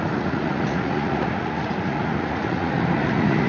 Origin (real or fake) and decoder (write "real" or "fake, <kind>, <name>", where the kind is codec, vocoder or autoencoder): fake, vocoder, Vocos